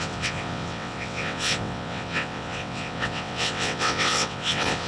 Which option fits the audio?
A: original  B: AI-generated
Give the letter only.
B